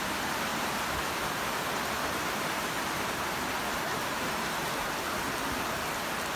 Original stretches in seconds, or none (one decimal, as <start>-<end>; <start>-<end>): 0.0-0.5; 4.3-6.4